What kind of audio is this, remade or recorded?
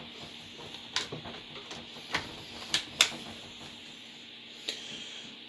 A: recorded